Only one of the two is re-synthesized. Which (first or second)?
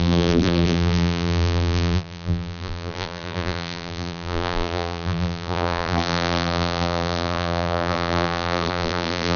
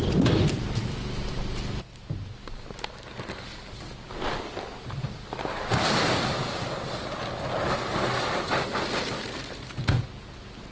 first